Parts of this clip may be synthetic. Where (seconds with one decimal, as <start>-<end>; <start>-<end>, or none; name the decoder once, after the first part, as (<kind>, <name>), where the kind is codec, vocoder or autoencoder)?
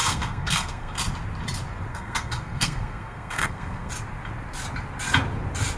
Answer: 0.0-1.0 (codec, SNAC); 1.9-3.9